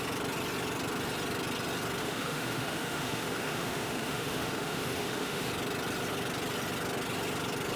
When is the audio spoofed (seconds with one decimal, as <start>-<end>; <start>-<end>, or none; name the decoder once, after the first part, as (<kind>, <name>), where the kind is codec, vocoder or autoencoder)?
2.0-5.5 (autoencoder, DAC-VAE)